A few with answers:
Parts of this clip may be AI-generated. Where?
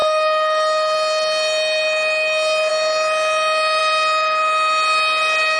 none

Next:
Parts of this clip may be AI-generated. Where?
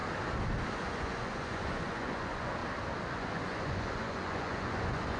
0.8-2.6 (vocoder, Vocos); 3.1-5.2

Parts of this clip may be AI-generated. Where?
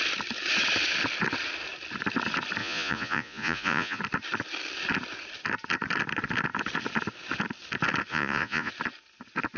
2.6-4.0 (vocoder, Vocos); 8.1-8.7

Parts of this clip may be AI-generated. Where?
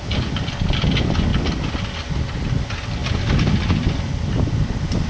none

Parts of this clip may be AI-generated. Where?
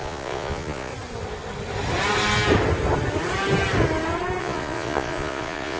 0.0-0.9 (vocoder, Vocos); 4.4-5.8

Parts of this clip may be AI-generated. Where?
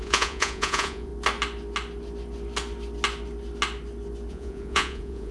0.0-1.1 (vocoder, Vocos); 4.3-5.3